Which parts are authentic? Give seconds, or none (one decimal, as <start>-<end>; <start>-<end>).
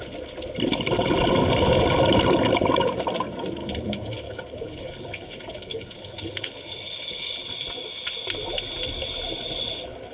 0.0-3.6; 7.4-10.1